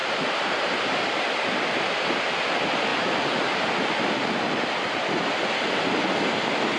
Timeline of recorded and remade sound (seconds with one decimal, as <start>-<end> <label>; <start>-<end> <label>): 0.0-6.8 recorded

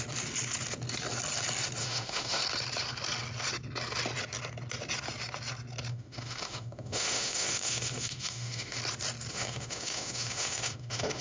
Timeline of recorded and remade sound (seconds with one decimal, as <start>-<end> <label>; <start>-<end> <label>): 0.0-1.8 recorded; 1.8-2.4 remade; 2.4-5.9 recorded; 5.9-8.8 remade; 8.8-9.3 recorded; 9.3-11.2 remade

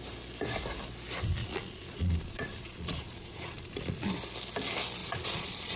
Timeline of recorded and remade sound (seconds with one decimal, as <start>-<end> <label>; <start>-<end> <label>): 0.0-1.4 recorded; 1.4-4.1 remade; 4.1-5.0 recorded; 5.0-5.8 remade

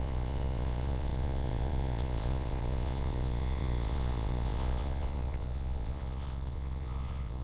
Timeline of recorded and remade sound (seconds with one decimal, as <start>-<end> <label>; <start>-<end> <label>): 0.0-7.4 remade